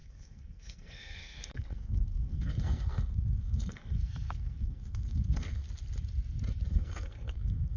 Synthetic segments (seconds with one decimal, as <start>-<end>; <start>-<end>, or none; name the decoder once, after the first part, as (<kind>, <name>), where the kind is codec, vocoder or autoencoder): 0.0-5.6 (codec, SNAC); 6.7-7.8